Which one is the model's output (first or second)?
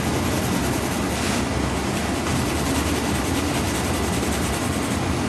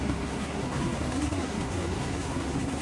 second